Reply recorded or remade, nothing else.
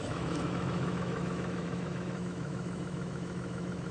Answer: remade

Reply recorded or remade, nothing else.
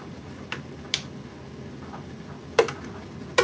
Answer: recorded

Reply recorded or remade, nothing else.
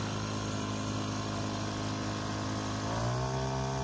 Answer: recorded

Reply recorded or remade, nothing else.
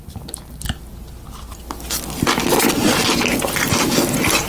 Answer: recorded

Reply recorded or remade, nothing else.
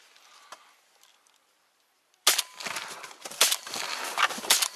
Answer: recorded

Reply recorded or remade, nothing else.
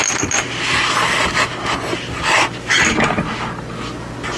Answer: recorded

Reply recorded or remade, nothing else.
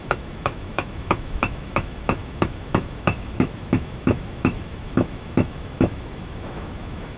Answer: remade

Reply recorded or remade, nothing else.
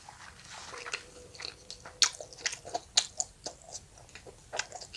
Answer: recorded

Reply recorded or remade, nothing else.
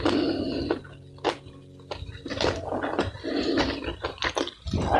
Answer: recorded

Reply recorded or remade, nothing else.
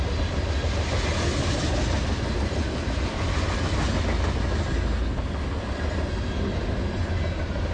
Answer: recorded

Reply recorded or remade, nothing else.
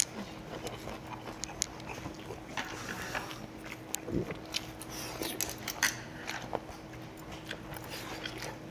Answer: recorded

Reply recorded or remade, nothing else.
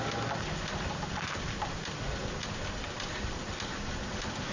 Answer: recorded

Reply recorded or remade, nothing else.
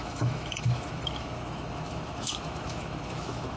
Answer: remade